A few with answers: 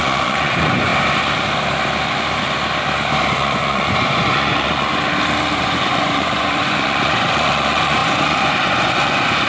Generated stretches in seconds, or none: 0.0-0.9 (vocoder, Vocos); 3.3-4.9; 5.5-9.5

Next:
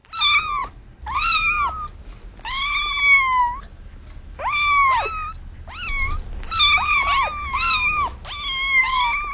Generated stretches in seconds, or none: none

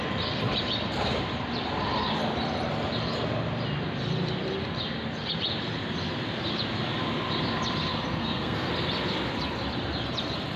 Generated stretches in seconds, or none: 8.2-8.7 (codec, SNAC)

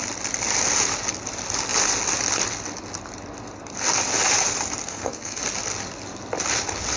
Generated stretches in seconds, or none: 4.8-5.4 (codec, SNAC)